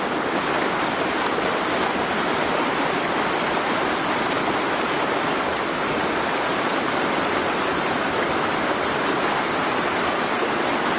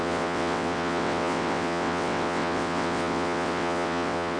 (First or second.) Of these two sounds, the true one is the first